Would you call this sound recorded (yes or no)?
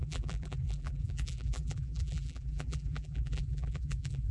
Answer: no